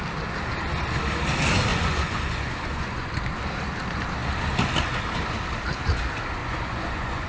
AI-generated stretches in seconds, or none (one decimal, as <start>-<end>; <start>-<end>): 1.7-3.2; 6.4-7.3